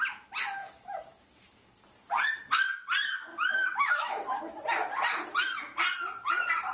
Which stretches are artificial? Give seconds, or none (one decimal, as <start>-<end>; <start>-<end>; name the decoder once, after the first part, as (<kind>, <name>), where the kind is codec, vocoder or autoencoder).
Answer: 0.6-1.8 (autoencoder, DAC-VAE); 3.3-4.6